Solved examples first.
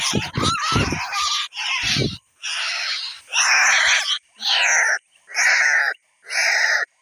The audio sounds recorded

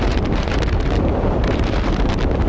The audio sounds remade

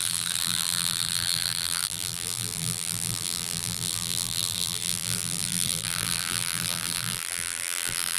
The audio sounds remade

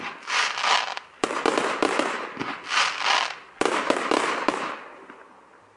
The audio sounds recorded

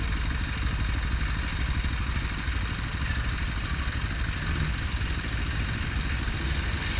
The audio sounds recorded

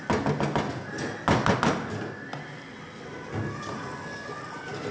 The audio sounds recorded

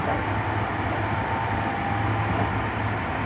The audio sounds recorded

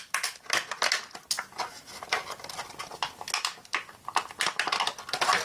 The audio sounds recorded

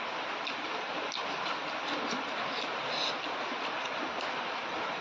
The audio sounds recorded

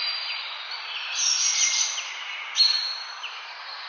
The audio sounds remade